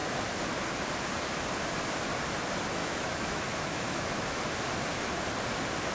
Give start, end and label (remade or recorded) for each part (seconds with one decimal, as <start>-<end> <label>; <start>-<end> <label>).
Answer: 0.0-2.8 recorded; 2.8-4.4 remade; 4.4-5.9 recorded